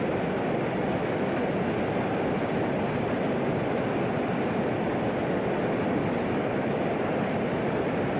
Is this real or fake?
real